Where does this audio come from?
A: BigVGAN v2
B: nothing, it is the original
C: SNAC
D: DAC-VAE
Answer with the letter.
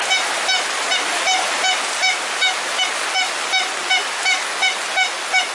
B